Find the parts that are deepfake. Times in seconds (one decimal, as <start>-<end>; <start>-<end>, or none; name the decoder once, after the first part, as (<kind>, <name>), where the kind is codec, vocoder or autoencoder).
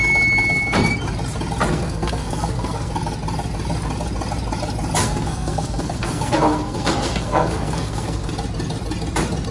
1.7-2.9 (codec, SNAC); 5.0-8.3